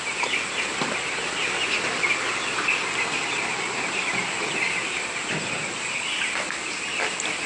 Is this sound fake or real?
real